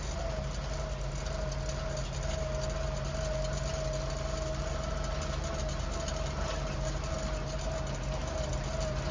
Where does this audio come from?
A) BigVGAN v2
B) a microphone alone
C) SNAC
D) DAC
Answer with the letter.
B